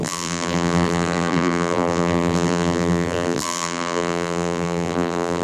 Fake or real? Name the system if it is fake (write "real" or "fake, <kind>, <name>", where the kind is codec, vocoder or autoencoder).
fake, vocoder, BigVGAN v2